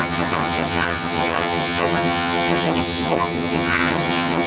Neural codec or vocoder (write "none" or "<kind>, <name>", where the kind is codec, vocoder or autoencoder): vocoder, HiFi-GAN